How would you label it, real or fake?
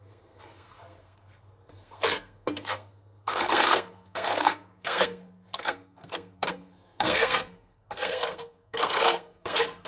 fake